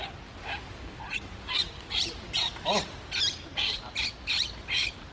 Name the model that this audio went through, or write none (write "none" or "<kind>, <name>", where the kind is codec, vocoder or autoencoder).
none